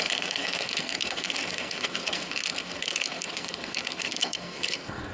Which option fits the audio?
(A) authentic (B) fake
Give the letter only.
B